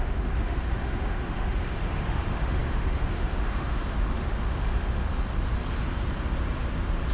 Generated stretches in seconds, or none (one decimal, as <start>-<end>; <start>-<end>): 0.0-5.1